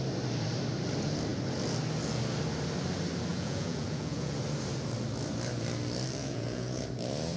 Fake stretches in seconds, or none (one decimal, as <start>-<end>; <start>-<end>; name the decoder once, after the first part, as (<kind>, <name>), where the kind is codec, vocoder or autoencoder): 3.3-4.4 (vocoder, Vocos); 6.2-6.8